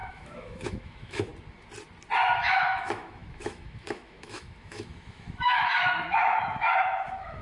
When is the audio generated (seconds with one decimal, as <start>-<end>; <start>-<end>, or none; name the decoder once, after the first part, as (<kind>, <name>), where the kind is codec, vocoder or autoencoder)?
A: 0.0-1.3 (autoencoder, DAC-VAE); 2.4-7.4